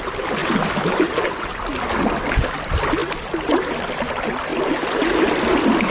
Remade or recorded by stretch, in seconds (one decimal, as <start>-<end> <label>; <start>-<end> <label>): 0.0-5.9 recorded